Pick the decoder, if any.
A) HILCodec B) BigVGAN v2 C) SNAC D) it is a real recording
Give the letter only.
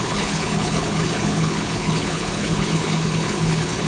A